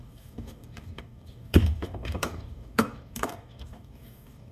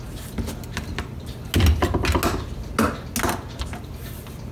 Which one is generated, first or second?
first